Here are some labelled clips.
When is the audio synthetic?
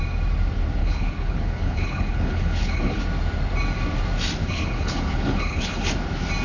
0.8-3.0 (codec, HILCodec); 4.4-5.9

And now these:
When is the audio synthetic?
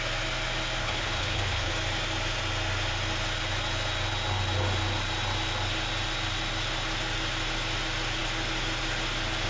0.8-1.7 (codec, HILCodec)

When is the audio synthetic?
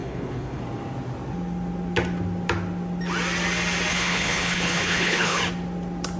0.0-0.6 (codec, HILCodec); 3.9-5.4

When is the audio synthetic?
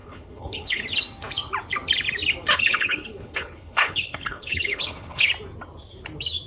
0.0-0.8 (codec, HILCodec); 2.5-5.3